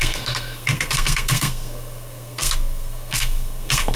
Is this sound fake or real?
fake